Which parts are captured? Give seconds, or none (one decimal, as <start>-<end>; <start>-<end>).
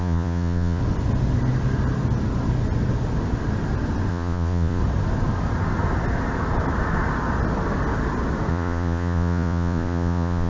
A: 0.8-4.1; 4.8-8.5